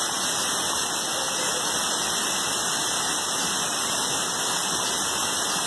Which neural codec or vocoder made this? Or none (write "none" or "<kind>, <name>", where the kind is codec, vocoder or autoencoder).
none